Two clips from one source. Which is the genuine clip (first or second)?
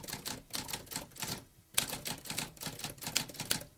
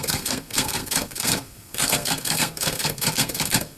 first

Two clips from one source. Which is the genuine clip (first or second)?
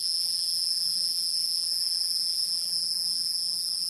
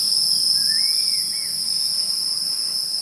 second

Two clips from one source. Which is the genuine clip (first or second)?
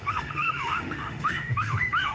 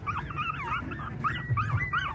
second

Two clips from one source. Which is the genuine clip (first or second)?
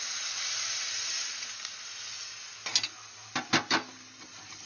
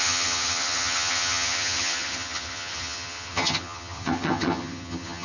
first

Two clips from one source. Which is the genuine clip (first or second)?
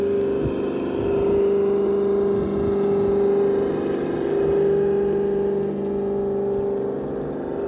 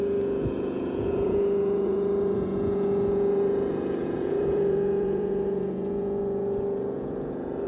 first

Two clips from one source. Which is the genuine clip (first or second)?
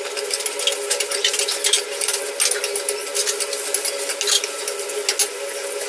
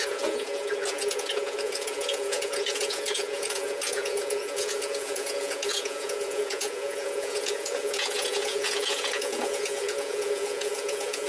first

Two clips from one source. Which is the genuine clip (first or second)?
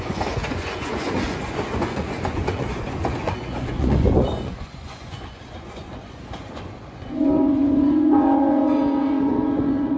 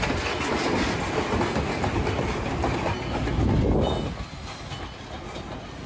second